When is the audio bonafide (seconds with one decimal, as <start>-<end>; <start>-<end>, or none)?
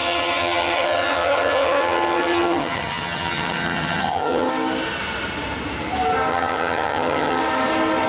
4.5-6.3; 7.4-8.1